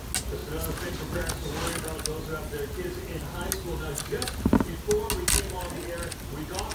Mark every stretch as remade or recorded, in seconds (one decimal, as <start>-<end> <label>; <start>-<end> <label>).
0.0-6.7 recorded